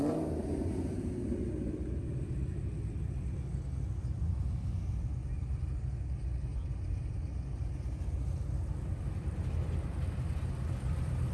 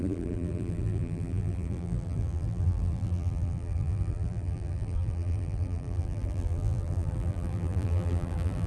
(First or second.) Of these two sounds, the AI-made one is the second